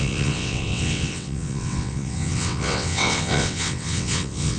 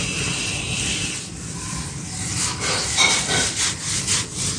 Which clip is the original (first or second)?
second